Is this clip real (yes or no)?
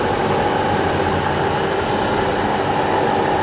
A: yes